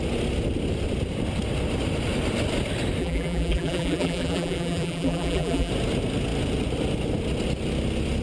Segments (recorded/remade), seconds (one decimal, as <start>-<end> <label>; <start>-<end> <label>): 0.0-3.0 recorded; 3.0-5.7 remade; 5.7-8.2 recorded